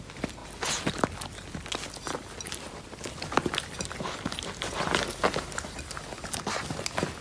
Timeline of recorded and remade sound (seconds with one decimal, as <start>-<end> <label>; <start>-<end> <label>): 0.0-7.2 recorded